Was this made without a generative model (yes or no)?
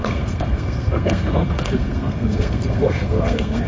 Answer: no